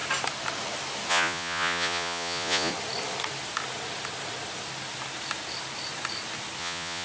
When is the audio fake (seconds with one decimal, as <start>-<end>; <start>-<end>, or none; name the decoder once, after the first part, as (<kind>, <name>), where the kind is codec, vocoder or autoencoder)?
1.1-2.7 (vocoder, Vocos); 6.6-7.0